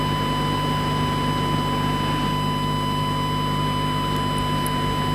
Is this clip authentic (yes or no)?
yes